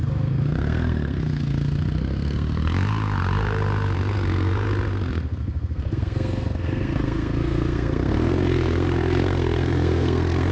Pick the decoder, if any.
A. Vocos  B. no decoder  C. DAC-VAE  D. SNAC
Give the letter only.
D